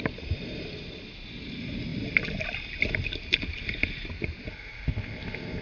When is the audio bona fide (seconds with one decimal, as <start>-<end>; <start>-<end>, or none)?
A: 0.0-4.5